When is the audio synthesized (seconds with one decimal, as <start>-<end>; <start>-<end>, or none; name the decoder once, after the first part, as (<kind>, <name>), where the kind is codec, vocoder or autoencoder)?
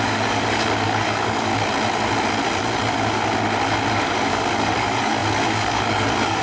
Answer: 0.0-1.5 (codec, DAC); 3.9-6.4